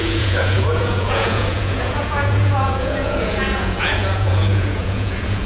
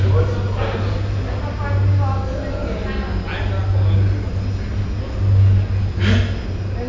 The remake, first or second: first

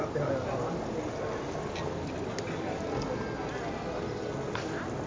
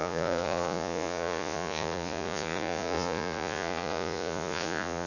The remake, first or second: second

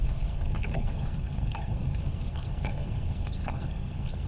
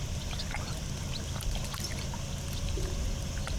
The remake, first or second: first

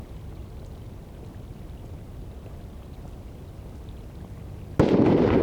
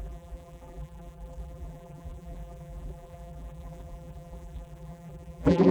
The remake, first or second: second